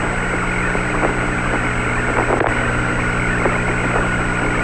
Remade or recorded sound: recorded